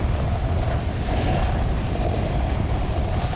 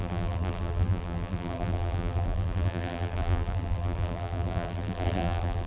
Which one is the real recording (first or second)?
first